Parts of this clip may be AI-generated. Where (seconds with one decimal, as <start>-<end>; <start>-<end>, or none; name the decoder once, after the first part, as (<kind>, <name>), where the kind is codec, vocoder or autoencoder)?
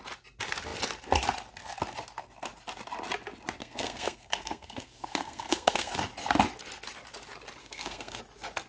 3.6-5.9 (codec, SNAC); 7.6-8.2